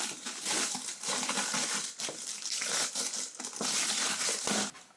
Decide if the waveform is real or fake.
real